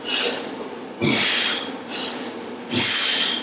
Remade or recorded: recorded